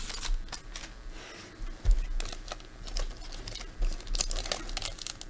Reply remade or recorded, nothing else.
recorded